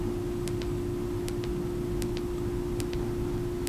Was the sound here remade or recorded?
recorded